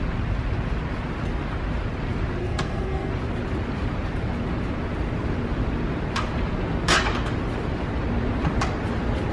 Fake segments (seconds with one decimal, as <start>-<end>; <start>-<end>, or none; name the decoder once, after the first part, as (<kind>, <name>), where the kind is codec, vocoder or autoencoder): 2.4-3.1 (codec, SNAC)